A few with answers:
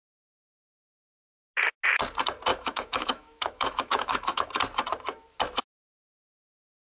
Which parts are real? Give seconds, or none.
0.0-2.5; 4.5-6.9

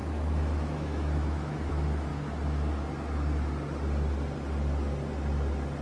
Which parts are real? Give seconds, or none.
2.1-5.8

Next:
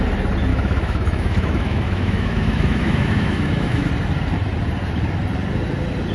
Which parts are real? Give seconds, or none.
0.0-0.5; 3.9-6.1

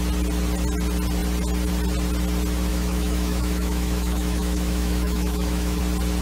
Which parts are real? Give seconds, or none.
0.0-2.7; 5.8-6.2

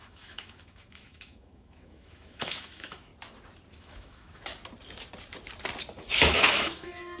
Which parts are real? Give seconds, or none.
3.1-3.8; 4.5-6.1

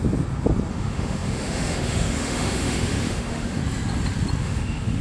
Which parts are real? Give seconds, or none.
0.0-0.7; 3.6-4.4